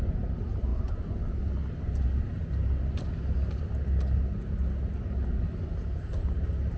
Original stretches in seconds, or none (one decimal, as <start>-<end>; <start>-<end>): 0.0-6.8